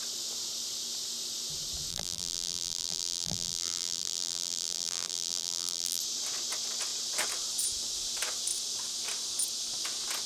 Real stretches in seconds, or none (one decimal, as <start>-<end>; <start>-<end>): 0.0-1.9; 6.0-10.3

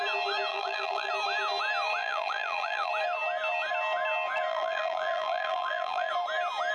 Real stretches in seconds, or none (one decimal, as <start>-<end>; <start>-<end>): 0.0-0.5; 1.1-2.0; 2.9-4.5; 6.1-6.7

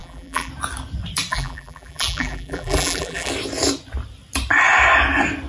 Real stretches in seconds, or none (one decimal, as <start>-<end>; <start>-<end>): 0.5-1.3; 3.3-5.5

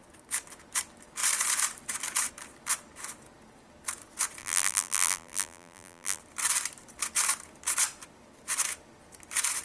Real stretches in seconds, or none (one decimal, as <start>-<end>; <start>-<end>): 0.0-4.4; 6.2-9.6

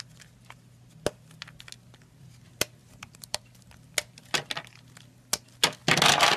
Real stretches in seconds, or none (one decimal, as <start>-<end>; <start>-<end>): 0.0-2.8; 3.4-6.4

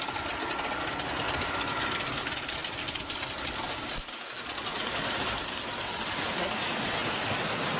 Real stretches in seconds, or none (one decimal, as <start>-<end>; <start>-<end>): 0.0-7.8